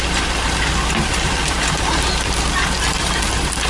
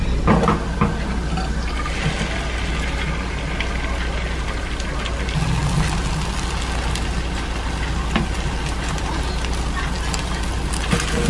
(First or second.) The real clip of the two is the second